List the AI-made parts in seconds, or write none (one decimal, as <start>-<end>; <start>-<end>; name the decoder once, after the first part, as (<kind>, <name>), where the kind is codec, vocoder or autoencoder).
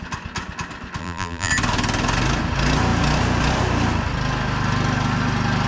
1.0-1.5 (vocoder, BigVGAN v2)